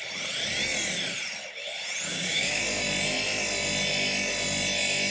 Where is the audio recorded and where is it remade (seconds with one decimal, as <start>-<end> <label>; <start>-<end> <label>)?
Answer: 0.0-2.1 recorded; 2.1-2.6 remade; 2.6-5.1 recorded

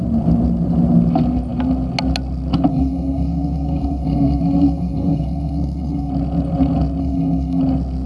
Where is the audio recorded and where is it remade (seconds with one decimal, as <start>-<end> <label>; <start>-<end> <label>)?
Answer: 0.0-2.7 recorded; 2.7-6.1 remade; 6.1-7.0 recorded; 7.0-7.6 remade; 7.6-8.1 recorded

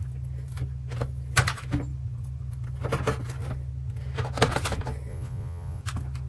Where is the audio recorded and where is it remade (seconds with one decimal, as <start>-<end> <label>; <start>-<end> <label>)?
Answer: 0.0-5.1 recorded; 5.1-5.8 remade; 5.8-6.3 recorded

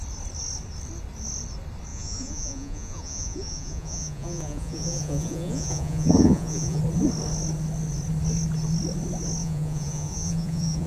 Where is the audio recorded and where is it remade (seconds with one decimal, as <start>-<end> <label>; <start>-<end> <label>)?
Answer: 0.0-1.9 recorded; 1.9-6.8 remade; 6.8-9.4 recorded; 9.4-10.9 remade

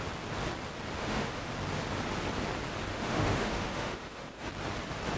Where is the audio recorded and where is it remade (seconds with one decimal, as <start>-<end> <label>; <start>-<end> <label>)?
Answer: 0.0-1.0 recorded; 1.0-1.5 remade; 1.5-2.9 recorded; 2.9-4.5 remade; 4.5-5.2 recorded

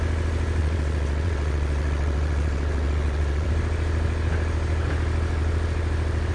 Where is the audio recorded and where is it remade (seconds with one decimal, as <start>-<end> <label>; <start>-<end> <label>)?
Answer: 0.0-0.6 recorded; 0.6-3.5 remade; 3.5-6.3 recorded

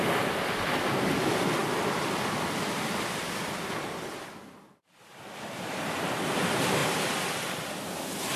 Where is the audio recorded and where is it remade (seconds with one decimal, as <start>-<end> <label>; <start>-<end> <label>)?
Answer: 0.0-1.6 recorded; 1.6-6.3 remade; 6.3-8.4 recorded

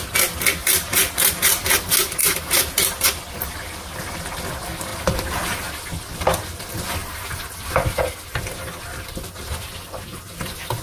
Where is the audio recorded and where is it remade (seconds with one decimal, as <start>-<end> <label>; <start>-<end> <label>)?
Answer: 0.0-0.6 recorded; 0.6-1.5 remade; 1.5-2.2 recorded; 2.2-3.2 remade; 3.2-10.8 recorded